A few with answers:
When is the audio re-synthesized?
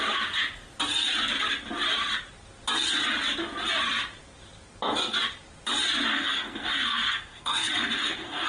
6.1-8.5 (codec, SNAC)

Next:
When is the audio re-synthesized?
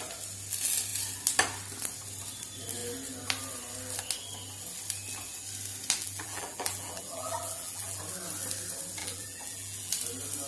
6.0-8.0 (vocoder, BigVGAN v2); 9.0-9.9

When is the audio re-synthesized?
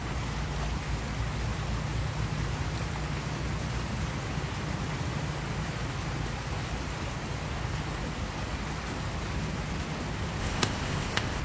10.4-11.4 (codec, ZipCodec)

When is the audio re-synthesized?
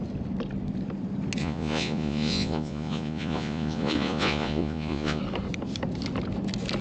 1.4-5.2 (vocoder, Vocos)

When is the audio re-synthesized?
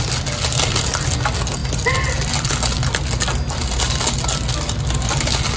none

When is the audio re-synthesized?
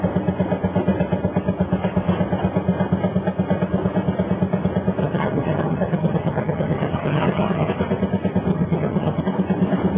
5.0-7.7 (vocoder, HiFi-GAN); 8.5-9.2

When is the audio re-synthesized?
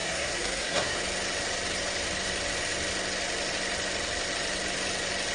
0.0-1.0 (codec, SNAC)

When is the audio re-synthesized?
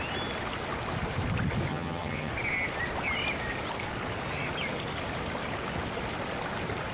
1.7-2.3 (vocoder, HiFi-GAN)